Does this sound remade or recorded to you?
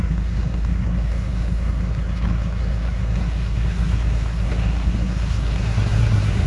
remade